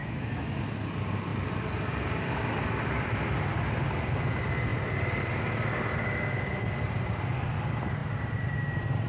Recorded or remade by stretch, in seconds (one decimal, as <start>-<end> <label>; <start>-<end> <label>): 0.0-0.6 remade; 0.6-9.1 recorded